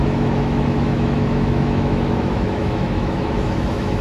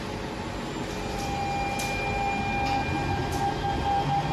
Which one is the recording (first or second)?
second